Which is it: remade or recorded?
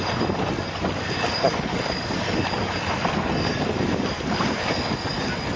recorded